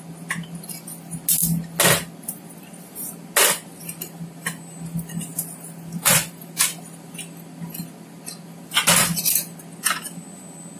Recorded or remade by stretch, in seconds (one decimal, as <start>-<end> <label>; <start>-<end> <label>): 0.0-10.8 recorded